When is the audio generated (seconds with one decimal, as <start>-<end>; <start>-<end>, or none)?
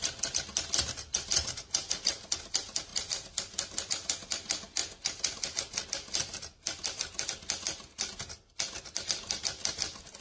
none